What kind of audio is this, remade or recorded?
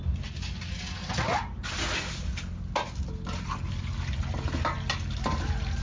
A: recorded